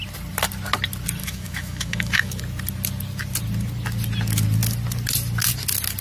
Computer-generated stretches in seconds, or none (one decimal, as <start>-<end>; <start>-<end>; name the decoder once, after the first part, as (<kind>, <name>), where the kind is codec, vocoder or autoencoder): 1.2-2.4 (autoencoder, DAC-VAE)